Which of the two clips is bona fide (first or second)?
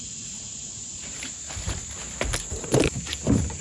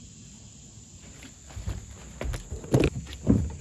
second